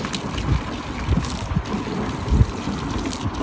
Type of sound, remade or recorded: recorded